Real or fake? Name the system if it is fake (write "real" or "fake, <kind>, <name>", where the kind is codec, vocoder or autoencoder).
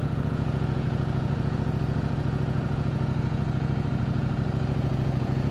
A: fake, vocoder, Vocos